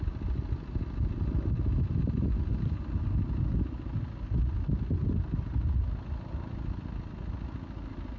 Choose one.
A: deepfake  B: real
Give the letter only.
B